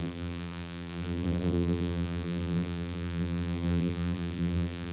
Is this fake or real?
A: fake